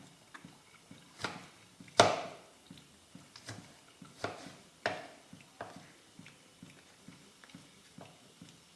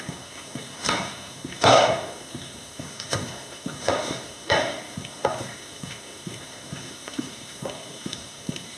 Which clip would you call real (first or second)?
first